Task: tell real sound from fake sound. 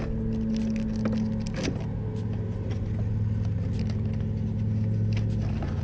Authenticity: real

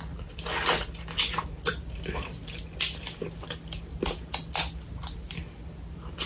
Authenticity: real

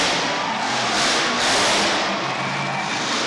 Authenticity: real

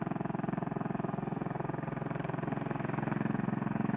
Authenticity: real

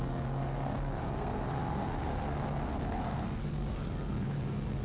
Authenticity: fake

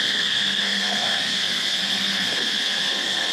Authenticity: fake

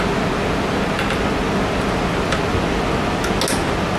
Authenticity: real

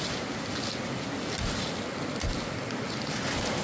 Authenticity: real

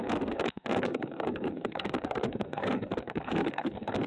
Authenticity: fake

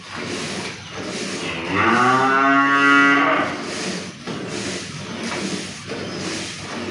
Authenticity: real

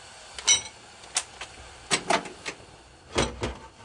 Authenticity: real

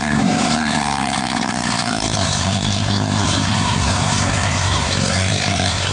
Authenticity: fake